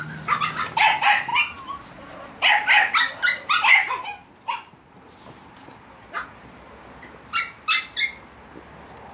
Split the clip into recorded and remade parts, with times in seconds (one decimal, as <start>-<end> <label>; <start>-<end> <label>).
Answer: 0.0-9.1 recorded